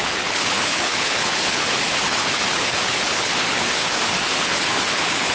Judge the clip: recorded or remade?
remade